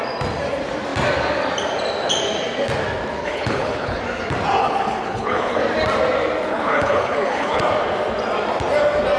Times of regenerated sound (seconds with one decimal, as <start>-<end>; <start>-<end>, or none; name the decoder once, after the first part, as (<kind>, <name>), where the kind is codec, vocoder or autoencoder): 3.2-4.0 (codec, HILCodec); 4.6-5.6; 6.5-7.6